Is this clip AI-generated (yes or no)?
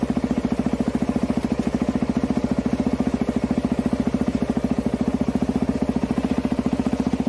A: no